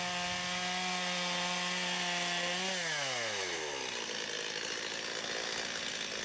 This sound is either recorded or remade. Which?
recorded